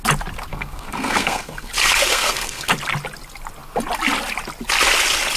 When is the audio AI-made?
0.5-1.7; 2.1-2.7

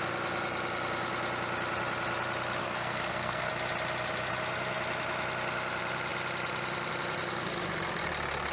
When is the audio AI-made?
2.6-3.5

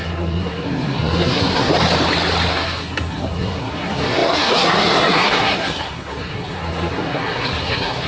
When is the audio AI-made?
0.0-1.7; 2.5-8.1

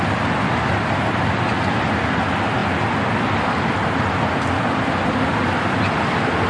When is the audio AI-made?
none

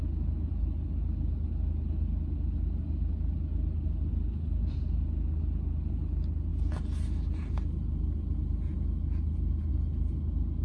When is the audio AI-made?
none

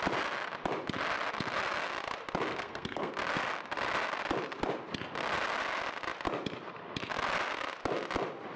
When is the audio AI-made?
2.5-3.1

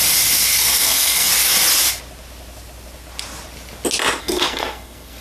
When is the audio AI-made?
0.6-1.3; 4.2-5.2